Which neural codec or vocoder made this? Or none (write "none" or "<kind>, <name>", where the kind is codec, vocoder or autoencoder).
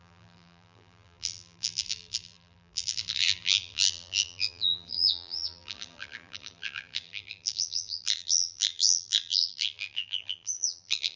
vocoder, BigVGAN v2